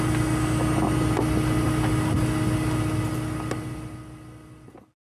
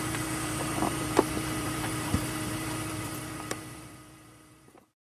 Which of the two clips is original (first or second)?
first